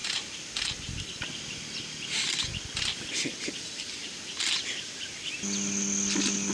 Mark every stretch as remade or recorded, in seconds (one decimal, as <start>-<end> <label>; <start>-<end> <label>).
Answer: 0.0-0.5 remade; 0.5-6.5 recorded